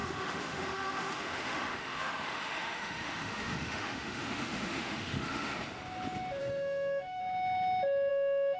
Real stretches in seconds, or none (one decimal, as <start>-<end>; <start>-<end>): 5.5-6.4; 7.2-8.1